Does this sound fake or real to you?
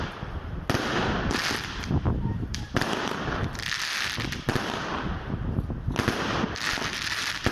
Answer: real